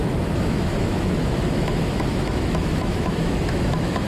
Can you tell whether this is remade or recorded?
remade